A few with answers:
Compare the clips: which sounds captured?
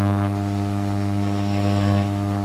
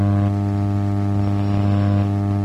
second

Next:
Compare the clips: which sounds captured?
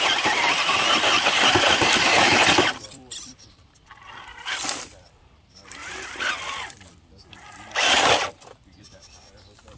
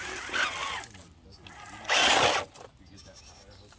second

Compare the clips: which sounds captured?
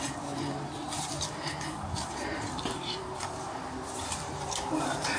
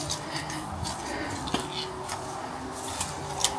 second